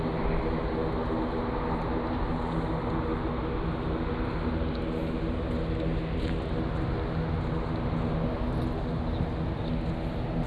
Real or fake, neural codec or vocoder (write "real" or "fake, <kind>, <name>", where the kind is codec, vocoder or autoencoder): real